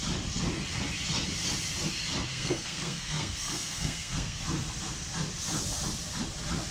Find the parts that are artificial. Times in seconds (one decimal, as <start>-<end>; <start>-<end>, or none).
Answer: 2.3-4.4